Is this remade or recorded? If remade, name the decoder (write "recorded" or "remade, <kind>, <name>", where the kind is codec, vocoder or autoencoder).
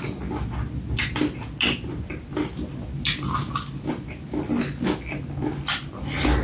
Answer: recorded